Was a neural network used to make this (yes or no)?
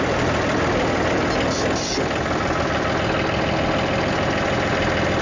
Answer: no